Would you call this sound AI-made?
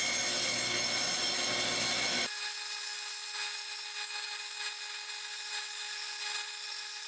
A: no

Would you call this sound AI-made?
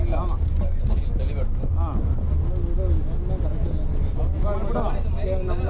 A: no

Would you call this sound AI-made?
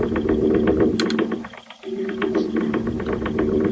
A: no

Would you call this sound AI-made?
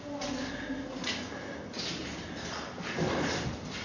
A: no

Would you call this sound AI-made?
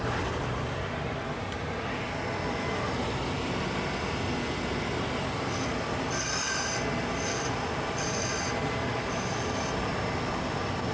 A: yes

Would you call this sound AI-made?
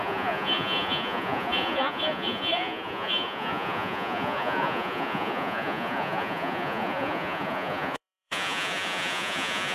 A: yes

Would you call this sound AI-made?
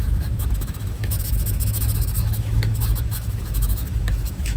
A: yes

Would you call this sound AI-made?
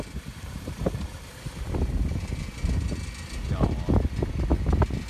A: no